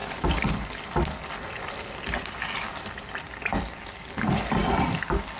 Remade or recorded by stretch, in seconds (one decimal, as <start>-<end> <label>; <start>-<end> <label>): 0.0-5.4 recorded